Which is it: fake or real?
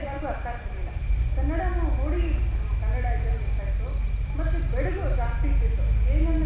real